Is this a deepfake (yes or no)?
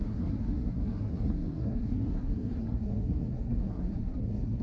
yes